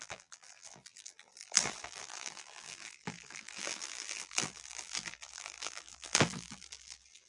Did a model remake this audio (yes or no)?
yes